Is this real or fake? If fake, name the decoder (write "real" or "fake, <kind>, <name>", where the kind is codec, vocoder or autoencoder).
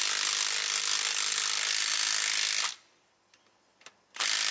real